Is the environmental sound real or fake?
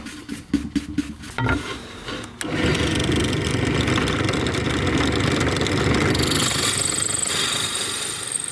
real